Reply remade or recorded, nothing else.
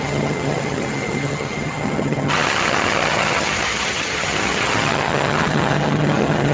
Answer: remade